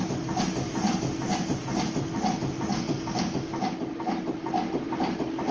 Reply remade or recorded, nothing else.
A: recorded